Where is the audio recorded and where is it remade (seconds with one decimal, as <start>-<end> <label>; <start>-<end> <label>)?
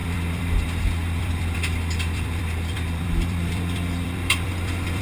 0.0-5.0 remade